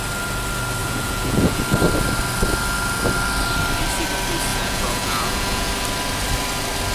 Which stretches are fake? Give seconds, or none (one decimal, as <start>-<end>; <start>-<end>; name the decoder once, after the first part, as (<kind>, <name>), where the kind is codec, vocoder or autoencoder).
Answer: 0.8-1.6 (vocoder, Vocos); 4.5-5.7